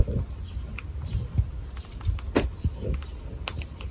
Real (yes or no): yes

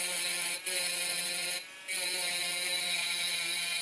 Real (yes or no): yes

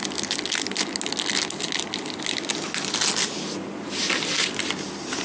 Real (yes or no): yes